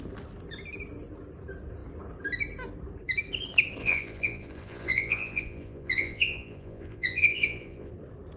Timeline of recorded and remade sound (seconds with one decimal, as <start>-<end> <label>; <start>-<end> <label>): 0.0-3.8 recorded; 3.8-7.9 remade; 7.9-8.4 recorded